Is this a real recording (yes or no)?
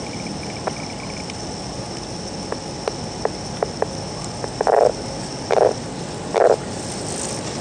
yes